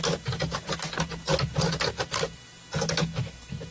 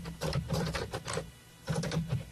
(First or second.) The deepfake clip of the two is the second